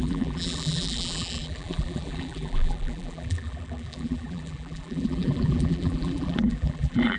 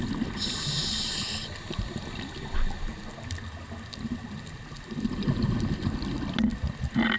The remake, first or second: first